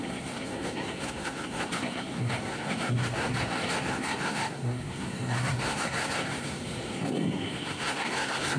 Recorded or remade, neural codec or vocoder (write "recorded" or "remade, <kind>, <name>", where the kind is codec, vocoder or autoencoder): remade, codec, SNAC